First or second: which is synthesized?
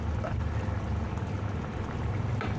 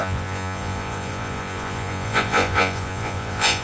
second